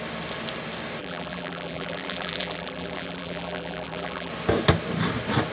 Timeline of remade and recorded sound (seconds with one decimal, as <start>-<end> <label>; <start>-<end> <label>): 0.0-1.0 recorded; 1.0-4.3 remade; 4.3-5.5 recorded